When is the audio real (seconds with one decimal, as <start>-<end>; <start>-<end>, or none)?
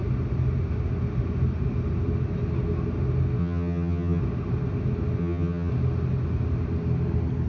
0.0-3.4; 4.2-5.2; 5.7-7.5